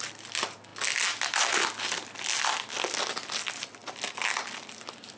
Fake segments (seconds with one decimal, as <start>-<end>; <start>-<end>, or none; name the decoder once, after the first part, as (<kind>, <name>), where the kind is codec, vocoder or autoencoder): none